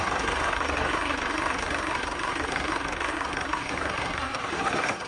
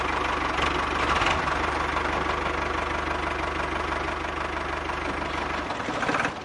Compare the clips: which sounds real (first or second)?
second